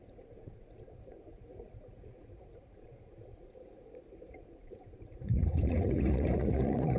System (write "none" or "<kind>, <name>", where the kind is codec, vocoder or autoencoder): vocoder, Vocos